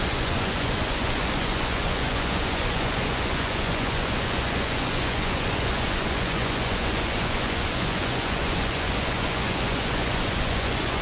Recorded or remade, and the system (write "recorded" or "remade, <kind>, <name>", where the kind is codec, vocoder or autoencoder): remade, vocoder, Vocos